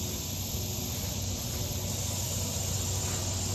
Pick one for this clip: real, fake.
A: real